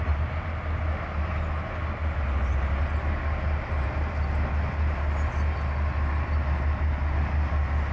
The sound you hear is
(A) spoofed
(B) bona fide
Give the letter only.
B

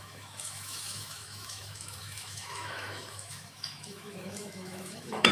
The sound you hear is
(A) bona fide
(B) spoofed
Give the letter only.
B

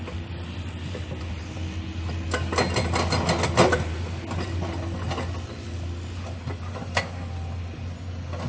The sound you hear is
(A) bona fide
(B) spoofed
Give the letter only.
A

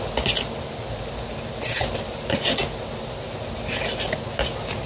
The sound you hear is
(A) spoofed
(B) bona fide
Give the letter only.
B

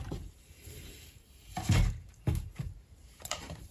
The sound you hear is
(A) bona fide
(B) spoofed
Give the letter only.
B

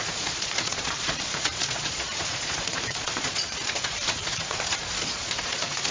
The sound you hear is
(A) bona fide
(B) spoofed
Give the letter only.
B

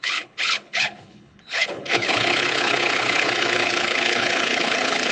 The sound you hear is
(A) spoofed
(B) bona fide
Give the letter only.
A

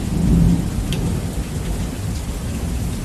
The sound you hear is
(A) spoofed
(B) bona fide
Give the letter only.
B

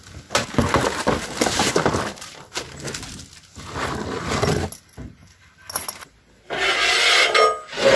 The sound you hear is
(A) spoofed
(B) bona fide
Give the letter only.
B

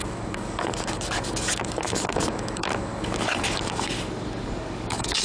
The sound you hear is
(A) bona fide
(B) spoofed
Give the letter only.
B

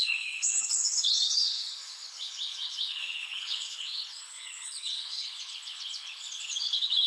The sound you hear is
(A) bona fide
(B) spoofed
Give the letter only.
B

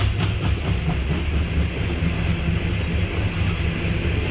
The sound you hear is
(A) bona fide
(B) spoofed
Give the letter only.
A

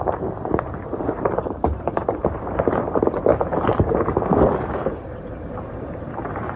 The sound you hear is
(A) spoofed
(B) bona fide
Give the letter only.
A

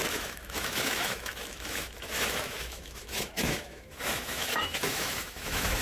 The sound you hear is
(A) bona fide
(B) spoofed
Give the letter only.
B